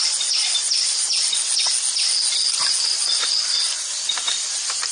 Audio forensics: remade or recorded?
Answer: recorded